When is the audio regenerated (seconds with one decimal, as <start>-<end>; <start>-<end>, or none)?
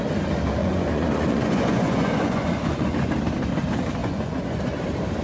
0.6-3.1; 4.0-4.6